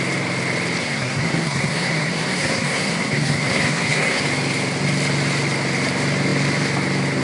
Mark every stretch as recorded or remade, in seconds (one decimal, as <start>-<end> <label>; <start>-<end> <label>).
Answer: 0.0-0.8 recorded; 0.8-4.2 remade; 4.2-7.2 recorded

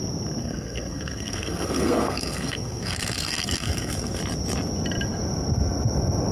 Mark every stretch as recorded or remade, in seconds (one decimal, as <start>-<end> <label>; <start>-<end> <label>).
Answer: 0.0-0.4 recorded; 0.4-4.2 remade; 4.2-6.3 recorded

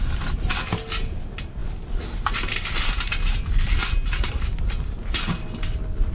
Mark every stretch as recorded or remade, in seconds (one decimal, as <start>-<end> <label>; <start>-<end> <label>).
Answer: 0.0-6.1 recorded

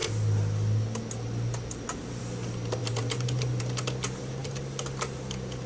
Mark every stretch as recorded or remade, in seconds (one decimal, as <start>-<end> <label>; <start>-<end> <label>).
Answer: 0.0-5.7 recorded